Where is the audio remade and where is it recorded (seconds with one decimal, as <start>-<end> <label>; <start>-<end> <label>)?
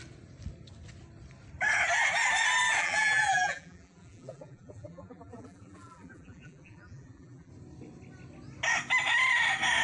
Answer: 0.0-2.8 recorded; 2.8-7.5 remade; 7.5-9.8 recorded